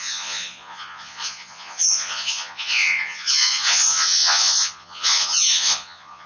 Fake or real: fake